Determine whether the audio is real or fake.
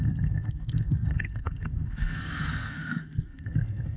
fake